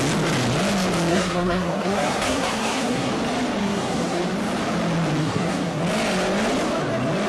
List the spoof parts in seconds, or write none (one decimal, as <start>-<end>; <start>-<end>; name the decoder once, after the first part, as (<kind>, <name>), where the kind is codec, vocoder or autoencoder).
1.1-3.1 (codec, SNAC); 3.6-4.2; 5.2-5.8